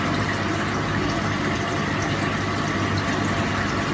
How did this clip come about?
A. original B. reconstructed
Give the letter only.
A